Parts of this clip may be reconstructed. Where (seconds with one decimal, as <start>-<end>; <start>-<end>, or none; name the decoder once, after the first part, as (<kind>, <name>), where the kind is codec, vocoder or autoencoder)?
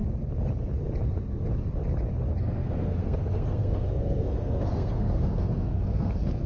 2.4-6.5 (codec, SNAC)